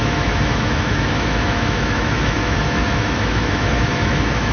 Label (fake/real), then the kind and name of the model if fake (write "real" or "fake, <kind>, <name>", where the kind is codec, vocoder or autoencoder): fake, autoencoder, DAC-VAE